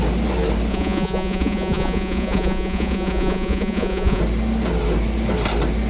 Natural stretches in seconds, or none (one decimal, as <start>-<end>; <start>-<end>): 0.0-0.7; 4.2-5.9

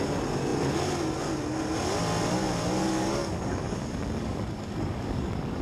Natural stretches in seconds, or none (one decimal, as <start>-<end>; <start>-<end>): 0.0-2.8

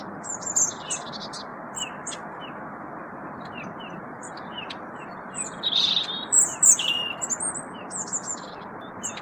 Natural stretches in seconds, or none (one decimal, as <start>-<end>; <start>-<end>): 7.3-8.5

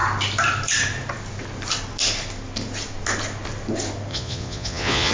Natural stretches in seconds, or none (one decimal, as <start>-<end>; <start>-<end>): 0.0-4.1